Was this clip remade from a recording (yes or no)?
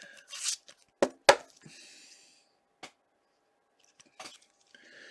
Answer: no